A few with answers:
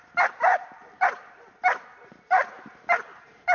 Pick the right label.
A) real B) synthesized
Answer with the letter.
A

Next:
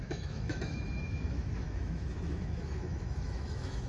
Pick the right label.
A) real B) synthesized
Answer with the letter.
B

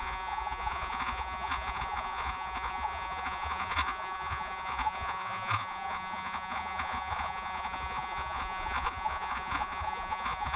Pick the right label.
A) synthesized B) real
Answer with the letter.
A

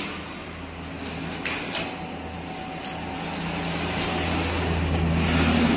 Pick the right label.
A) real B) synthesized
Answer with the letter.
A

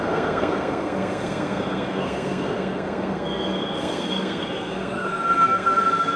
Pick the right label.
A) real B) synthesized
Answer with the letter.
B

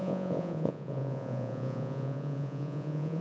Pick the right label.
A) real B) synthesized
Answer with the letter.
B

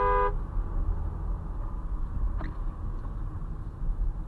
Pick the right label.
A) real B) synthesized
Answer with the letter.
A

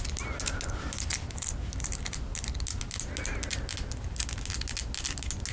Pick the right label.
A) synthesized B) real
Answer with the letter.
B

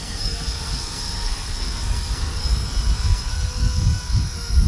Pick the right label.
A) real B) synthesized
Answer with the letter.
B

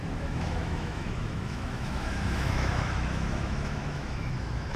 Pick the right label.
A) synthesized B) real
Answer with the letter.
A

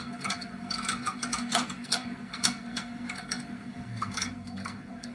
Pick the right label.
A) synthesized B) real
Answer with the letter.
A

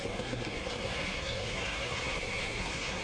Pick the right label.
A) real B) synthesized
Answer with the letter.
B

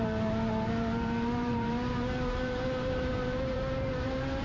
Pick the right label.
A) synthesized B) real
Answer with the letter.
A